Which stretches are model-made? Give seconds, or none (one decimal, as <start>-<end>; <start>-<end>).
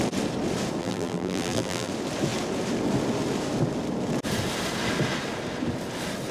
0.8-1.9